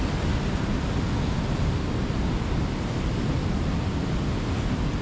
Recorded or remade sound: recorded